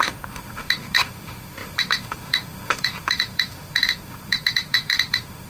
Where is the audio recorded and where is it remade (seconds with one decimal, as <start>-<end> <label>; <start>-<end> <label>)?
0.0-5.5 remade